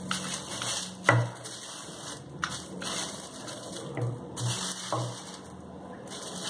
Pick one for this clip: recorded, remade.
recorded